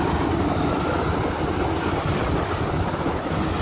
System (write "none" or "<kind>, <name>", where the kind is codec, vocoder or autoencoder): none